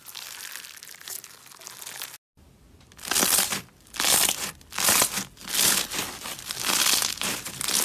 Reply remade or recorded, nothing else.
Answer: recorded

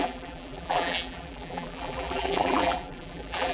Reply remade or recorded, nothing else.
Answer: remade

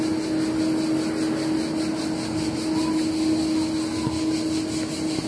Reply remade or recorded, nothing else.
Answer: recorded